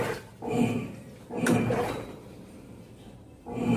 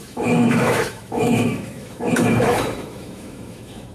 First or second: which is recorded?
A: first